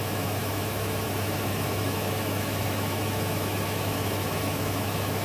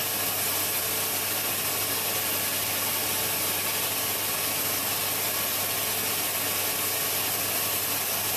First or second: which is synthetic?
first